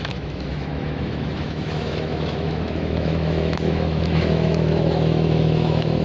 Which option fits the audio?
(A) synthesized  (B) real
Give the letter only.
A